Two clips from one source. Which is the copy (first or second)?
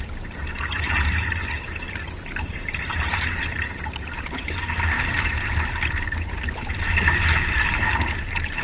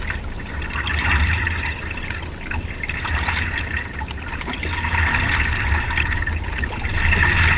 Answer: first